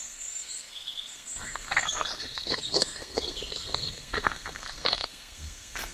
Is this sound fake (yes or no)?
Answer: yes